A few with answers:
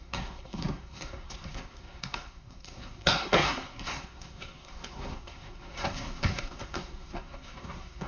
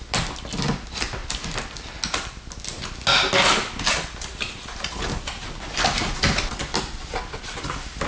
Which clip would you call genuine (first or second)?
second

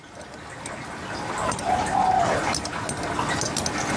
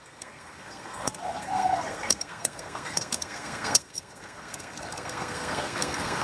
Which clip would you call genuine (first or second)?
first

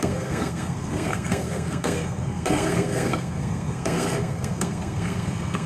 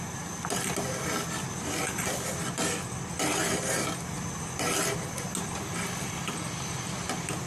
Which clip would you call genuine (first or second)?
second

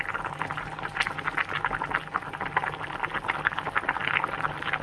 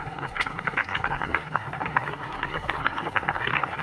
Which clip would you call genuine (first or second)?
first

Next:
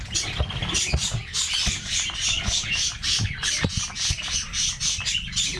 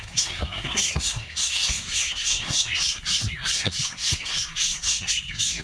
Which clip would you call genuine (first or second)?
first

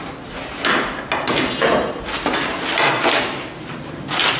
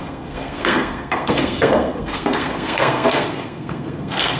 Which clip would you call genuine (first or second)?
first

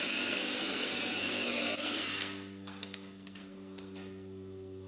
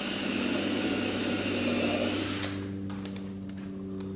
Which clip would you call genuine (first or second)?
second